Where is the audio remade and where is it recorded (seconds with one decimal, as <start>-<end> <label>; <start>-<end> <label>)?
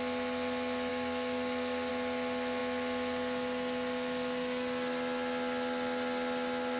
0.0-0.9 recorded; 0.9-1.9 remade; 1.9-6.8 recorded